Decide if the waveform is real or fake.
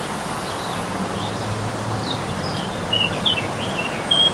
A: real